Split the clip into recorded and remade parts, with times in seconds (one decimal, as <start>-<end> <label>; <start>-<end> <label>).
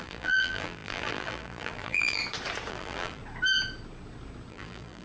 0.0-2.2 remade; 2.2-2.7 recorded; 2.7-3.2 remade; 3.2-4.5 recorded; 4.5-5.0 remade